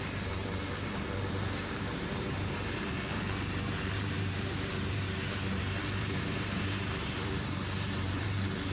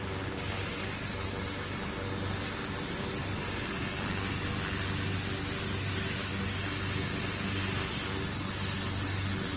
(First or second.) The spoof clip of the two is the first